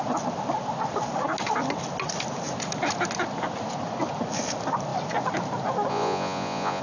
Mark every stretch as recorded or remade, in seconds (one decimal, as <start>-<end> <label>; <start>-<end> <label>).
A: 0.0-5.9 recorded; 5.9-6.8 remade